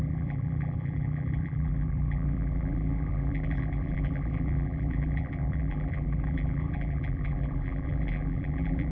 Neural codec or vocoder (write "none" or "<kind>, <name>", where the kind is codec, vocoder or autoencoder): vocoder, BigVGAN v2